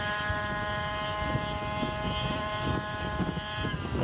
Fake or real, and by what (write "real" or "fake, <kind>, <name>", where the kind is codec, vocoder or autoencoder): real